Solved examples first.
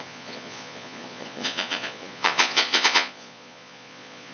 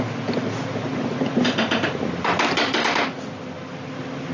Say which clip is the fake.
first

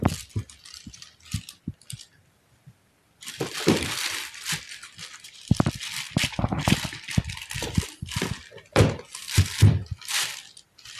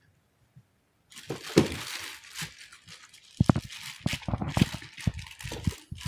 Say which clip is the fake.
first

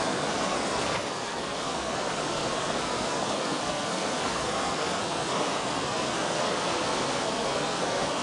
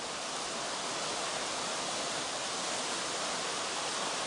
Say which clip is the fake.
first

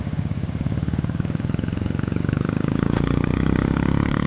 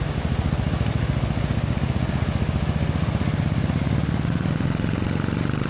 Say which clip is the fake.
first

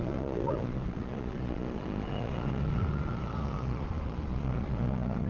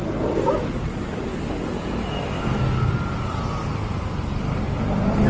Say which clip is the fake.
first